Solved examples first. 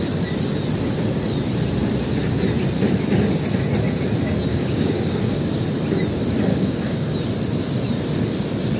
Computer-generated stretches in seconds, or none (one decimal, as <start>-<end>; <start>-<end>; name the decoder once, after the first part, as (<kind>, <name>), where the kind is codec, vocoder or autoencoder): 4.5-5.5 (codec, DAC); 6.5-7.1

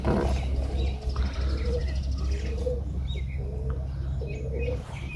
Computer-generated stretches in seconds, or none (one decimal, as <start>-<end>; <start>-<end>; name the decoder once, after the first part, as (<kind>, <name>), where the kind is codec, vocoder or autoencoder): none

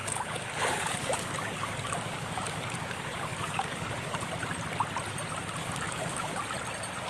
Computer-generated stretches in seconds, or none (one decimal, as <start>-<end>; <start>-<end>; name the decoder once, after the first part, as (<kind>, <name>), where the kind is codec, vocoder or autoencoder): 0.0-4.3 (codec, DAC); 5.6-6.4

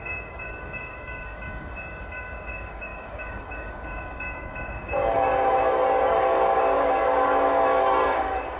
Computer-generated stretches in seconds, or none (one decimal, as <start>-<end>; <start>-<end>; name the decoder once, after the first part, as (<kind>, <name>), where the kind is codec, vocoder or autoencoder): 0.0-8.6 (codec, DAC)

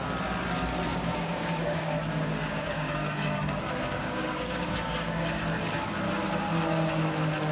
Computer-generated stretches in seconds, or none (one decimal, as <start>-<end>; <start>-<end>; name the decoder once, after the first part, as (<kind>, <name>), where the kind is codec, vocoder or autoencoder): 0.9-5.4 (codec, DAC)